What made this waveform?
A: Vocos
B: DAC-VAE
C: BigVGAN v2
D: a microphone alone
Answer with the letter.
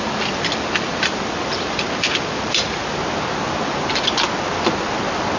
D